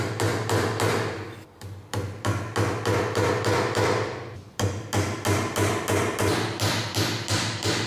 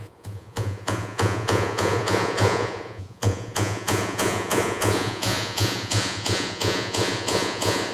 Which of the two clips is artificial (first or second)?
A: second